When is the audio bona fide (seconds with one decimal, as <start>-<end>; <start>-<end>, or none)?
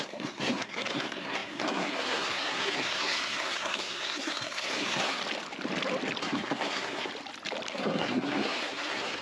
5.2-6.2; 7.1-7.7